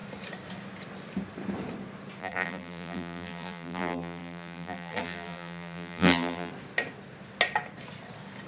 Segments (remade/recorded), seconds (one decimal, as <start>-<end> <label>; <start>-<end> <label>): 0.0-2.2 recorded; 2.2-6.5 remade; 6.5-8.5 recorded